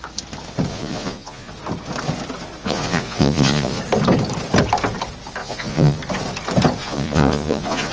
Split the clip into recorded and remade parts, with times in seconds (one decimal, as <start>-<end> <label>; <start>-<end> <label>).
0.0-0.7 recorded; 0.7-1.5 remade; 1.5-2.6 recorded; 2.6-3.8 remade; 3.8-5.4 recorded; 5.4-6.0 remade; 6.0-6.8 recorded; 6.8-7.9 remade